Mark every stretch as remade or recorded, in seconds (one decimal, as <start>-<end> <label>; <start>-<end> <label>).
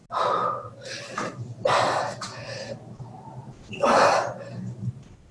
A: 0.0-5.3 recorded